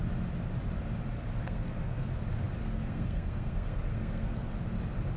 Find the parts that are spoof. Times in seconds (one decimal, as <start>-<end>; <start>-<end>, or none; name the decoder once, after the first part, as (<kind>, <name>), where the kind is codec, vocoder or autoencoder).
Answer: 1.4-2.2 (codec, SNAC); 2.6-4.5